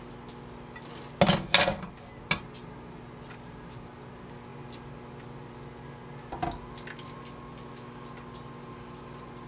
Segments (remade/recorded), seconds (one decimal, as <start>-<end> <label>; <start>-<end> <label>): 0.0-9.5 recorded